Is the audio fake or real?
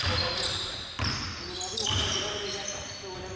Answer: real